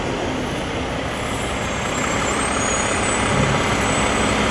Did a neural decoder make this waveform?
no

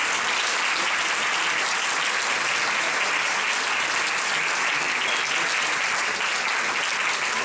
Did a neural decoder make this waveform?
no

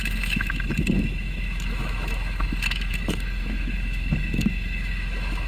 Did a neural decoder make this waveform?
yes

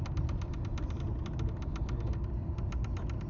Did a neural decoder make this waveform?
no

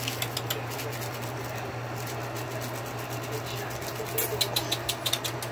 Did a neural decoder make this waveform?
no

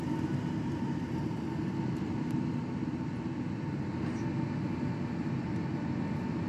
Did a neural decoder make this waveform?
no